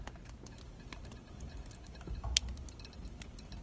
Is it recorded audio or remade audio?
recorded